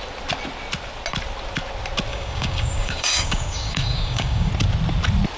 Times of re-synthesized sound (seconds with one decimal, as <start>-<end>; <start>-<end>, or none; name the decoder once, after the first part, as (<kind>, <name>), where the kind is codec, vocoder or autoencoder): 2.1-4.5 (codec, DAC)